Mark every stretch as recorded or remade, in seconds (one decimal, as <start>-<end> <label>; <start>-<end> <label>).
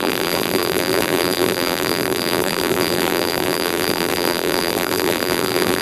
0.0-5.8 remade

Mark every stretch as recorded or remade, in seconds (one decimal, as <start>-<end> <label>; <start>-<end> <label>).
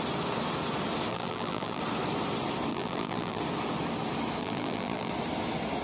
0.0-1.1 recorded; 1.1-1.8 remade; 1.8-2.7 recorded; 2.7-3.4 remade; 3.4-4.4 recorded; 4.4-5.1 remade; 5.1-5.8 recorded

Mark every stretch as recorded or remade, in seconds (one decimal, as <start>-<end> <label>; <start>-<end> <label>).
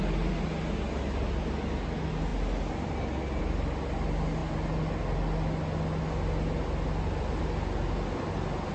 0.0-8.7 recorded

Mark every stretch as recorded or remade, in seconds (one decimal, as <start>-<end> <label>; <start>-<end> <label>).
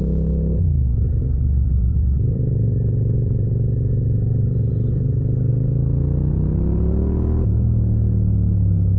0.0-0.9 recorded; 0.9-5.5 remade; 5.5-9.0 recorded